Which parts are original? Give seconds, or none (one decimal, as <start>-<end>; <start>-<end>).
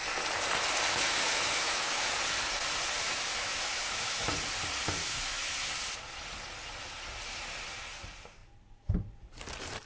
0.0-0.9; 2.1-3.0; 4.3-5.0; 5.7-9.9